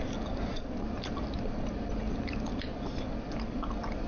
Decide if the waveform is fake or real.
real